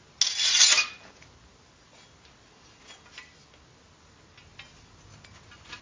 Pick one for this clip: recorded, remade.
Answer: recorded